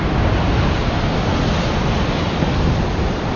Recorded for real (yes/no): yes